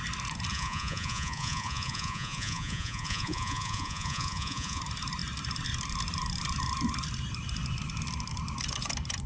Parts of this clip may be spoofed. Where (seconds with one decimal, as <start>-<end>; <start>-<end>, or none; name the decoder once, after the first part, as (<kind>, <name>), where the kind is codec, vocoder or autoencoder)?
0.5-4.8 (vocoder, Vocos)